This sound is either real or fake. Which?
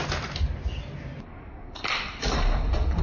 real